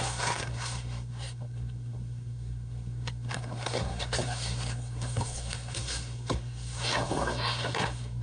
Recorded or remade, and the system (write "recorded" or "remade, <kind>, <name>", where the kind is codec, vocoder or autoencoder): remade, codec, SNAC